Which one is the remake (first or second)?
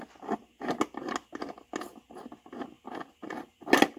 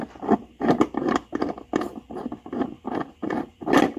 second